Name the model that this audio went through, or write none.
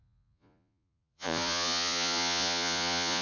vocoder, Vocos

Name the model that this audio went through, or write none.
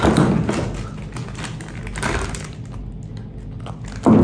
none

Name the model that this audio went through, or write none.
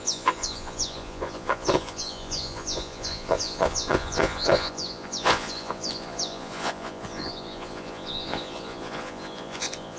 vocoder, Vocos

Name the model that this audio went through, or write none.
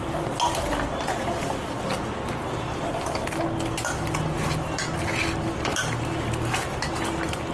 none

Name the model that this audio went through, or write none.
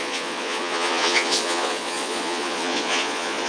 vocoder, Vocos